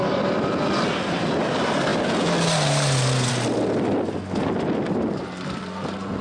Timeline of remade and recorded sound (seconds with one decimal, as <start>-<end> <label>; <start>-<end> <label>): 0.0-6.2 recorded